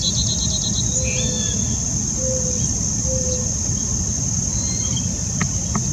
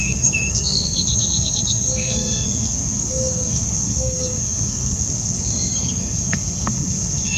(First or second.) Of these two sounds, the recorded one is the first